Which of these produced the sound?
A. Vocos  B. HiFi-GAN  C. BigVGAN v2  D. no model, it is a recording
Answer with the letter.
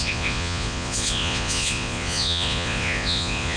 A